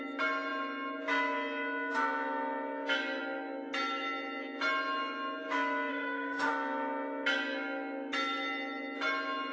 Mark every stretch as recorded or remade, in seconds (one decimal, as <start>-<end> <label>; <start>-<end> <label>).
0.0-5.9 recorded; 5.9-6.5 remade; 6.5-9.5 recorded